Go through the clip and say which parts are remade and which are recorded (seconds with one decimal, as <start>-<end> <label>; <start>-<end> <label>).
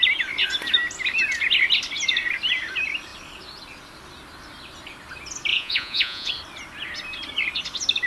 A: 0.0-5.5 recorded; 5.5-6.3 remade; 6.3-8.1 recorded